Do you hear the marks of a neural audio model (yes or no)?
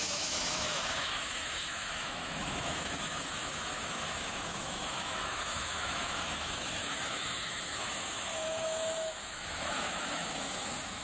yes